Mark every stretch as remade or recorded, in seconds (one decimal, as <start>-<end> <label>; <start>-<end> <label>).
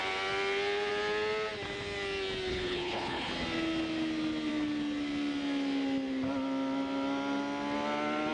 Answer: 0.0-2.5 recorded; 2.5-3.3 remade; 3.3-8.3 recorded